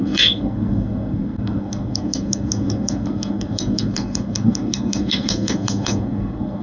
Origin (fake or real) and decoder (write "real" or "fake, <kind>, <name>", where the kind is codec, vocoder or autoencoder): fake, codec, SNAC